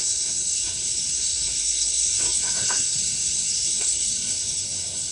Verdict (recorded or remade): remade